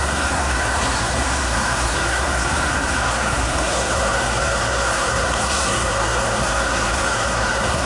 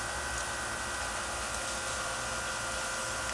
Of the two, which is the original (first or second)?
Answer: second